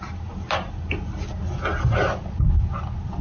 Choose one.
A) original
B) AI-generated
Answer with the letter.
A